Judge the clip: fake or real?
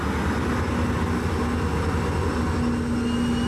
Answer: real